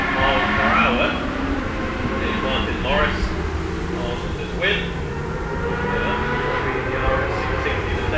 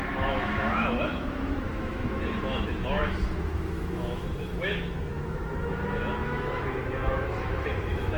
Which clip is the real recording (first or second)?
first